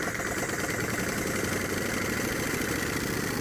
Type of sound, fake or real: fake